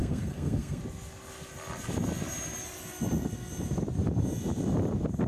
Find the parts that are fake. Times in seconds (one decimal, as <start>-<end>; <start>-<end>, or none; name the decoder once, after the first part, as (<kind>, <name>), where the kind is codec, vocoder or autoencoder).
0.0-0.8 (codec, SNAC)